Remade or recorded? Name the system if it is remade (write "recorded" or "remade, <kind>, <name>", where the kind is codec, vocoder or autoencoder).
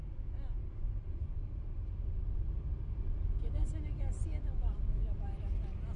recorded